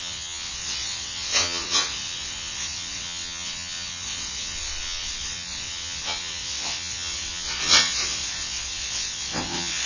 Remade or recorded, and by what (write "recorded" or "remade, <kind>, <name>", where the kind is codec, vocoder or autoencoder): remade, vocoder, WaveNeXt